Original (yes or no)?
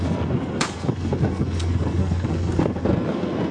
no